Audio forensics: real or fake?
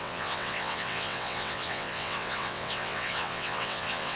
fake